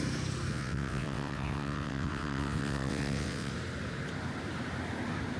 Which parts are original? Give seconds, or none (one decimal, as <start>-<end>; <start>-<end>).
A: 0.0-0.5; 3.5-5.4